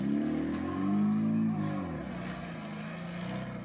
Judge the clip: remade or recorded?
recorded